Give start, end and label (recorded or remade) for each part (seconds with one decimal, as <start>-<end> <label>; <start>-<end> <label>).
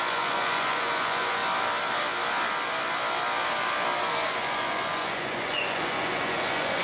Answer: 0.0-1.4 remade; 1.4-4.0 recorded; 4.0-6.8 remade